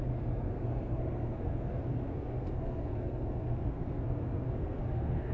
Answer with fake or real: fake